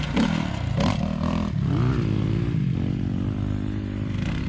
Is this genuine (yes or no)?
yes